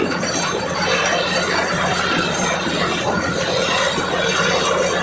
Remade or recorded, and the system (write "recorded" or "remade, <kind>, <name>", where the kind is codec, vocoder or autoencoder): recorded